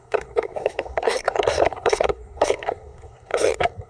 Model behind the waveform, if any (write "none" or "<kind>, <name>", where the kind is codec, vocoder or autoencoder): codec, SNAC